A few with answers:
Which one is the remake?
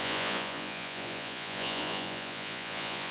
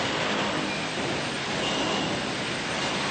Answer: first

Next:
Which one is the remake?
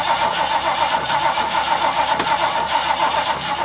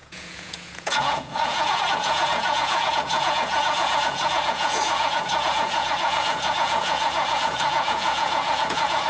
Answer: second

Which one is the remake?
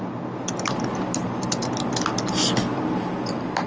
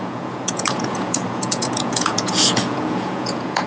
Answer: second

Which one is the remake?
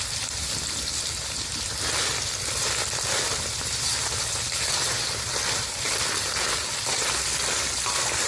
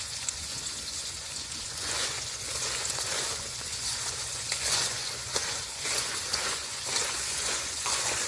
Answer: second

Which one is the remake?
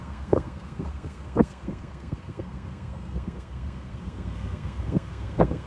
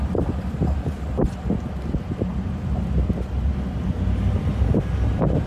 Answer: first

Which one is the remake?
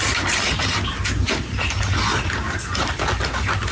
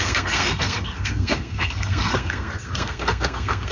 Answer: second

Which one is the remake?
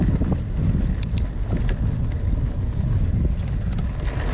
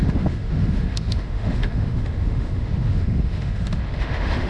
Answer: second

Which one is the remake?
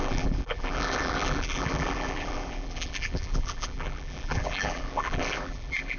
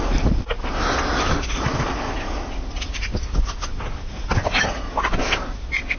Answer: first